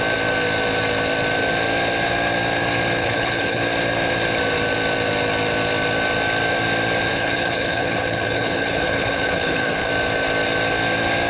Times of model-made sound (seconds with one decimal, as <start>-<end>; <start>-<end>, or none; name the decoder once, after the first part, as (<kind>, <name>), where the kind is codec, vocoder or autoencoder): 3.0-3.6 (codec, HILCodec); 7.1-9.9